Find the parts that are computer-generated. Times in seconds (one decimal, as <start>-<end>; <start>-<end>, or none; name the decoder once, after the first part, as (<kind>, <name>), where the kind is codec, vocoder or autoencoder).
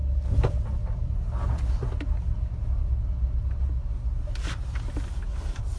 none